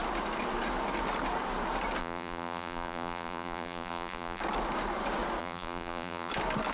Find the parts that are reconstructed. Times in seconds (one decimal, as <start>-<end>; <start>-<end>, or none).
2.0-4.4; 5.4-6.3